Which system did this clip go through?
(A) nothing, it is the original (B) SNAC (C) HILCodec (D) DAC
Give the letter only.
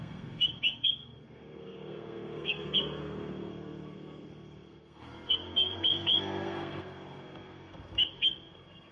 B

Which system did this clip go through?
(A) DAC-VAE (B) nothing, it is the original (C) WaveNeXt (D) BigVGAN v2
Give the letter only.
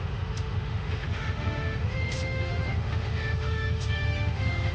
A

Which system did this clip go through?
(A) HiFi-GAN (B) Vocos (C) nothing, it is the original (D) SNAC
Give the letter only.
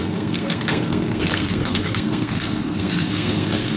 D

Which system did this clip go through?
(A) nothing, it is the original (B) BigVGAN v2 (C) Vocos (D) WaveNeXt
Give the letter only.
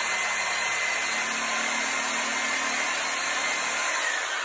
A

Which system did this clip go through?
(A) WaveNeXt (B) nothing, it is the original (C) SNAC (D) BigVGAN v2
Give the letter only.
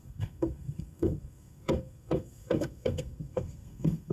C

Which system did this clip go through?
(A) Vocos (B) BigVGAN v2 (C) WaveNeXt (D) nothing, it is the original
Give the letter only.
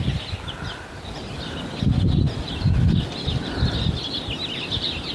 D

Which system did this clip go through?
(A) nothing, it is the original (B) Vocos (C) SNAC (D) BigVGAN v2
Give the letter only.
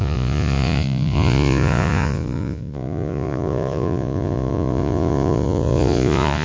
B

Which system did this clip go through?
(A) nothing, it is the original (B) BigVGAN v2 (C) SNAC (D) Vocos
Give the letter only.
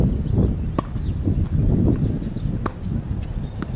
A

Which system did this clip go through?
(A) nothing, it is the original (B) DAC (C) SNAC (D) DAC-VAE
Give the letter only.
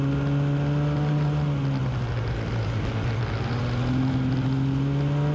A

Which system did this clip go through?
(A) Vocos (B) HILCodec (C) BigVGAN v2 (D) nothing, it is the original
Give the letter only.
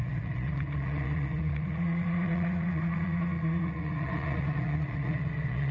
A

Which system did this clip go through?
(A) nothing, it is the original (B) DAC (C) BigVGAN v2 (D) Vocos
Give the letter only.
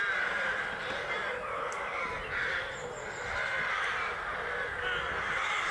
A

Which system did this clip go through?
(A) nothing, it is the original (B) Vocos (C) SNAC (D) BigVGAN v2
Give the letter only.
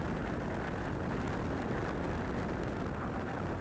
A